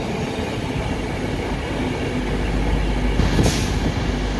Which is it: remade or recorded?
recorded